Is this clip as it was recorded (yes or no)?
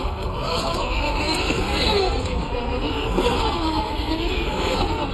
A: no